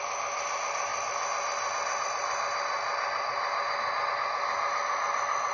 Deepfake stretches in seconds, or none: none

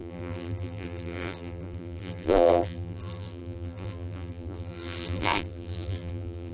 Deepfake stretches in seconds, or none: 0.0-6.5 (vocoder, BigVGAN v2)

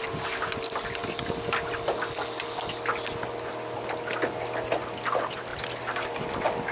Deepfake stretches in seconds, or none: none

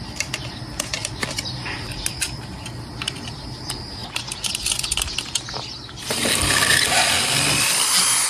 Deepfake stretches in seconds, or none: 1.0-2.0 (vocoder, BigVGAN v2)